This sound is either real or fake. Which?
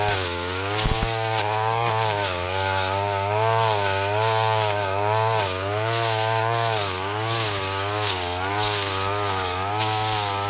fake